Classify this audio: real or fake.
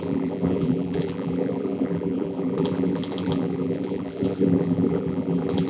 fake